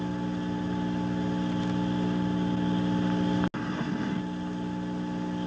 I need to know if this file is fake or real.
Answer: real